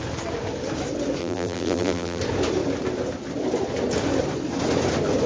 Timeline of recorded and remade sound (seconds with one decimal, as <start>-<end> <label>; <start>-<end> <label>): 0.0-1.2 recorded; 1.2-2.2 remade; 2.2-5.3 recorded